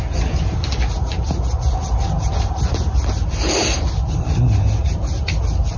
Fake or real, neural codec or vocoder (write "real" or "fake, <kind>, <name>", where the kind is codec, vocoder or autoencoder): real